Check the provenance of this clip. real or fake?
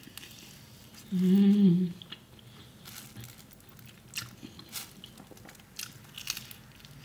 real